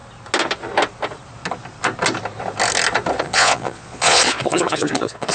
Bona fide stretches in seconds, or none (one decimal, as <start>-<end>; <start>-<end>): 0.0-3.2